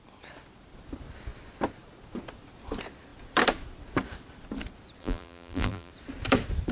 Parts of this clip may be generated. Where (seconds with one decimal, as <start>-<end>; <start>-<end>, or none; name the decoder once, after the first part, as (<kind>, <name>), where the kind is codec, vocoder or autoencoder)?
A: 5.0-5.9 (vocoder, BigVGAN v2)